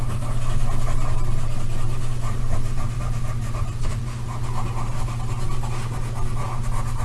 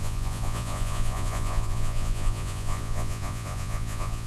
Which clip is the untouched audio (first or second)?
first